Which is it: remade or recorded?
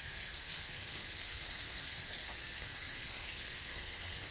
remade